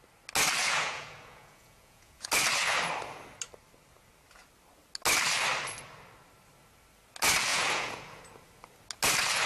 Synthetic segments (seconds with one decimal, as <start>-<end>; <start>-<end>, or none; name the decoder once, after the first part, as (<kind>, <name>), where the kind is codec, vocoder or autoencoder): 0.6-2.3 (vocoder, Vocos); 7.5-8.2